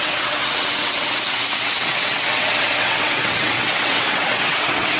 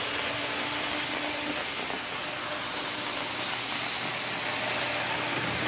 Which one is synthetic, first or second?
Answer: first